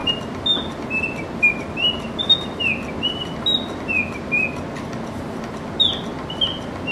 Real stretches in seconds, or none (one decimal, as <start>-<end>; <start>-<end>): 0.0-6.9